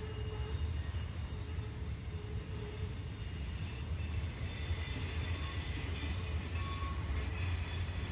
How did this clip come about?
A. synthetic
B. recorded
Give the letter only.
B